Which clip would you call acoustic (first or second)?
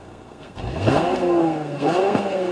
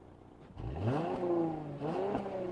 second